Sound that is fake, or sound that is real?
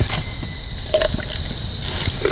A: real